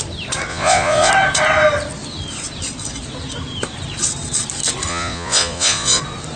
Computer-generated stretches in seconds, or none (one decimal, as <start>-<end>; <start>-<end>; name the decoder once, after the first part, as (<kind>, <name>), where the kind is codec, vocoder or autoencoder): 0.5-1.1 (vocoder, Vocos); 4.9-6.0